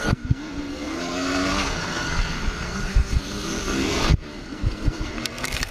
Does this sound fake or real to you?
fake